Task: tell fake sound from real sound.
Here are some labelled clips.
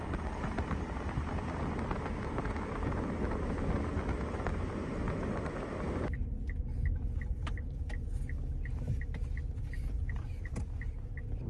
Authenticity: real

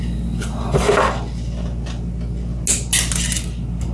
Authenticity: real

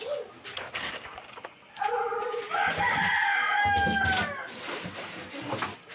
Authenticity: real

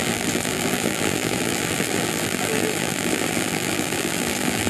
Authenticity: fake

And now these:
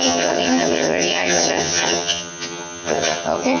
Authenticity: fake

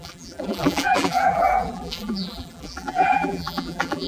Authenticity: fake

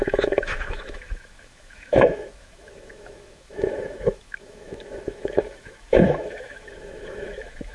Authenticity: fake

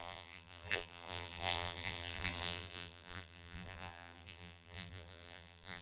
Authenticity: fake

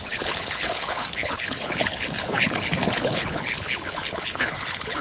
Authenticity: fake